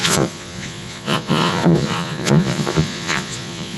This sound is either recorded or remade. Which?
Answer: remade